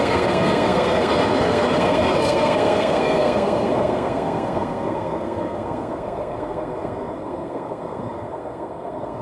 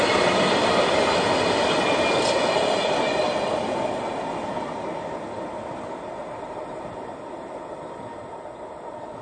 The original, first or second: second